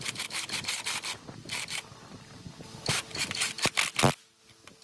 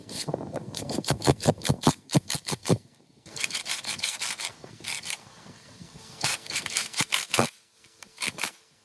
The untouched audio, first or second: first